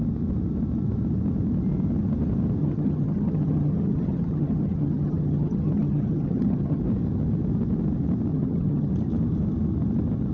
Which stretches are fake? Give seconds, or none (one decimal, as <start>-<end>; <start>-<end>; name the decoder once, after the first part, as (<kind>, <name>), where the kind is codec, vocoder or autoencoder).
2.6-6.8 (vocoder, HiFi-GAN); 8.3-8.9

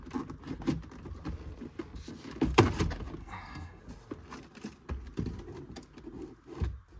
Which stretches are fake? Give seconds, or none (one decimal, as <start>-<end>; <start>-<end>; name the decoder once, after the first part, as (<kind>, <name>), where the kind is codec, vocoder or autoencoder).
3.2-3.8 (codec, SNAC)

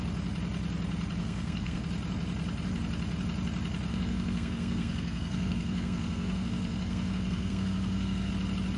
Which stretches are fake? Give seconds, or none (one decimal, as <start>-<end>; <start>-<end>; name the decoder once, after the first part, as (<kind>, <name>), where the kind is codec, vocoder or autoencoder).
1.2-1.8 (codec, SNAC); 3.9-8.3

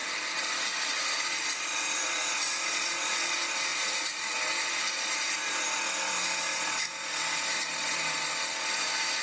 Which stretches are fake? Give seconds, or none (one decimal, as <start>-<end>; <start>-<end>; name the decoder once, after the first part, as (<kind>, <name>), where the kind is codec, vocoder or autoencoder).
3.7-4.4 (vocoder, Vocos)